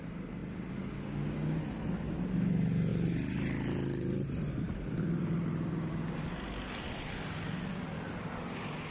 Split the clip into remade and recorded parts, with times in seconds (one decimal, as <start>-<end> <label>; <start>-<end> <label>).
0.0-2.9 recorded; 2.9-5.7 remade; 5.7-8.9 recorded